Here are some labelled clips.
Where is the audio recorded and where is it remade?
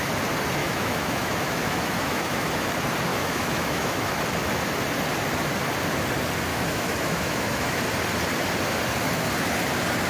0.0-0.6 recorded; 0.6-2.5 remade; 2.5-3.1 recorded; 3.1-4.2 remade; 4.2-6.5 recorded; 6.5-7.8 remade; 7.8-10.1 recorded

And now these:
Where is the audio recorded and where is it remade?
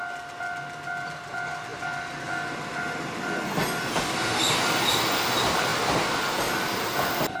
0.0-7.4 recorded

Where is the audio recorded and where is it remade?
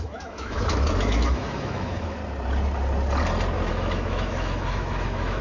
0.0-2.2 remade; 2.2-3.7 recorded; 3.7-5.4 remade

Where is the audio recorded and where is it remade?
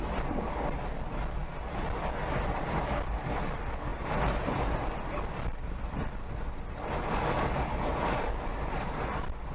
0.0-9.5 recorded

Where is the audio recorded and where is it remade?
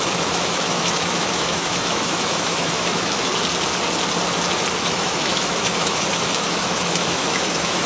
0.0-3.3 remade; 3.3-4.8 recorded; 4.8-7.9 remade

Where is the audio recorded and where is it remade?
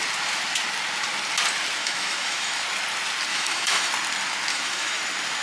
0.0-1.8 recorded; 1.8-2.6 remade; 2.6-3.3 recorded; 3.3-3.9 remade; 3.9-4.5 recorded; 4.5-5.0 remade; 5.0-5.4 recorded